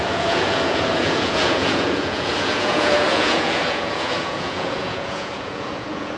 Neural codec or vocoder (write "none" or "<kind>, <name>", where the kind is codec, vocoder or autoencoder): vocoder, Vocos